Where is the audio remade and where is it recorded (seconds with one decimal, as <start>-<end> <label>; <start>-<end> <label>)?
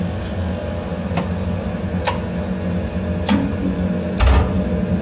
0.0-5.0 recorded